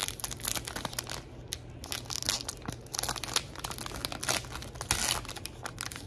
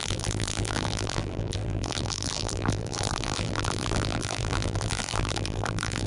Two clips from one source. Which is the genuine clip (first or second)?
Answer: first